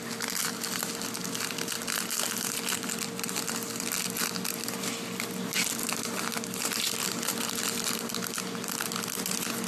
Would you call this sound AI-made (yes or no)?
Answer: no